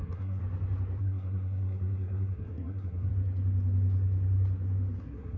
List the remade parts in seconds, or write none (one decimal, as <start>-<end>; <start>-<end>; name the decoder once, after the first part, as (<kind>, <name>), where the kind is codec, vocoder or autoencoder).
0.0-0.4 (codec, SNAC); 1.0-3.1; 5.0-5.4